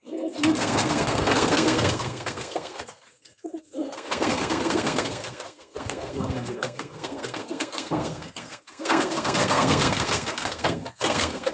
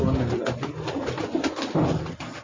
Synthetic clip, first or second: first